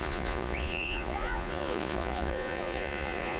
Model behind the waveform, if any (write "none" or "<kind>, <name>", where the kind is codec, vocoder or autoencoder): vocoder, Vocos